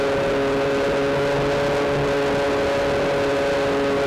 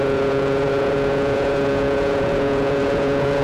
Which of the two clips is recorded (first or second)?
first